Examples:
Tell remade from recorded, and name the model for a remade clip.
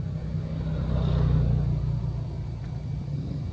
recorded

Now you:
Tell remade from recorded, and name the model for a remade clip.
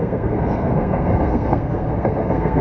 remade, codec, SNAC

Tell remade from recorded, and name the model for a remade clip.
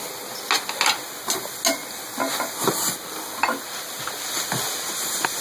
recorded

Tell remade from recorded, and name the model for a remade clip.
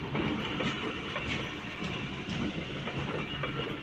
recorded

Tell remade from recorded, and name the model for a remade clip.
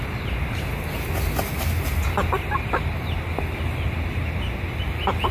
recorded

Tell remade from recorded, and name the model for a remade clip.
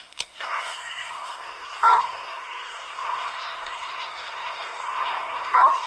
remade, codec, SNAC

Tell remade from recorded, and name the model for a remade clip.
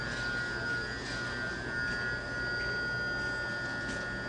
recorded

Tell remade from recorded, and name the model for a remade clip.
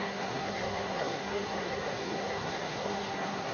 remade, codec, SNAC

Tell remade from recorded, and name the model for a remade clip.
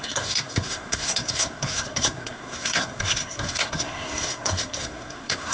remade, codec, SNAC